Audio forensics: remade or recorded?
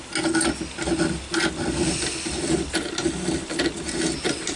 recorded